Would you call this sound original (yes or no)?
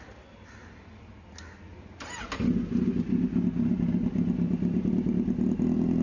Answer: yes